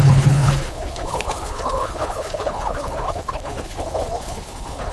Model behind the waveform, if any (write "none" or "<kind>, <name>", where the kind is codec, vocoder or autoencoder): codec, HILCodec